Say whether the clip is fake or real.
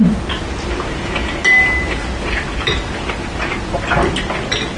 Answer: real